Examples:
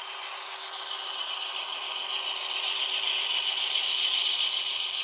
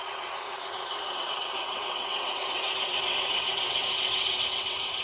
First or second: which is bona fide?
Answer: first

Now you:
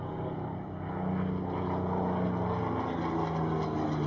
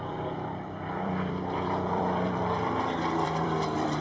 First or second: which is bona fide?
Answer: first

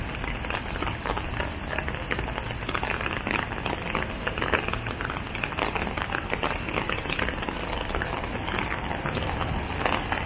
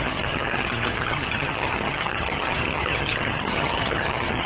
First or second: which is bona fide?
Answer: first